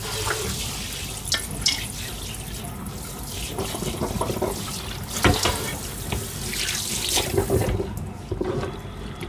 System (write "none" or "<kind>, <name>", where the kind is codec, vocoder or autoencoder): none